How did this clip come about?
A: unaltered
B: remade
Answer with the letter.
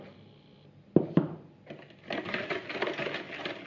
A